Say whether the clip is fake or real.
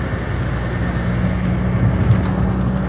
real